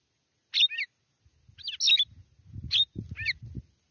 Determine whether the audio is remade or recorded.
recorded